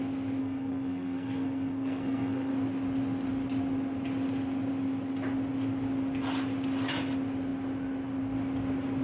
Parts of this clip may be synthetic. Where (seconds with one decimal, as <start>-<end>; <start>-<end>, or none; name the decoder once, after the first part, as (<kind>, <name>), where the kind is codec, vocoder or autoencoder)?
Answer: 0.4-2.5 (codec, SNAC)